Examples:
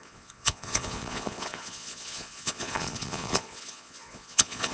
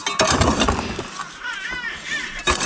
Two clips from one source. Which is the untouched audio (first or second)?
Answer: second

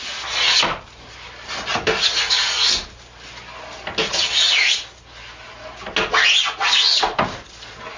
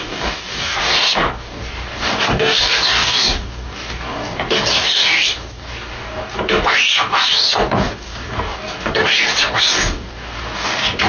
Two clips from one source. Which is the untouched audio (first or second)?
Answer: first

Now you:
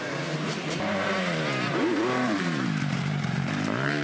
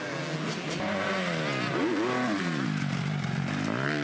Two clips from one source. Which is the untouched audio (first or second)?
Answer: second